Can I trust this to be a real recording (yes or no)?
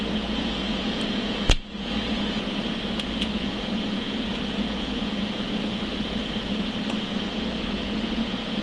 no